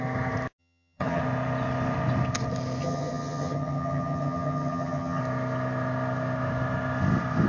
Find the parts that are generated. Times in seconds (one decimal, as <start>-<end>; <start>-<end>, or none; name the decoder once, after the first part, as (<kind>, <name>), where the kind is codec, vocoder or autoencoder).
0.6-1.2 (vocoder, HiFi-GAN); 2.8-5.2

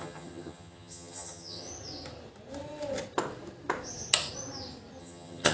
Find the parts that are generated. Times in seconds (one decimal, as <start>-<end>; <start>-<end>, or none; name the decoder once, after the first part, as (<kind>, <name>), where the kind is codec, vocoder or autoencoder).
0.0-1.7 (vocoder, HiFi-GAN); 5.0-5.5

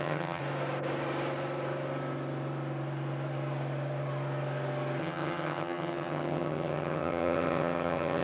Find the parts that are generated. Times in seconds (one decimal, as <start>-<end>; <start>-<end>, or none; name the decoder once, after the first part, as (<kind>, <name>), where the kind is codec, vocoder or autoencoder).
0.0-0.4 (vocoder, HiFi-GAN); 5.0-8.2